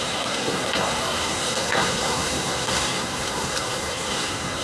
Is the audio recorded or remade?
remade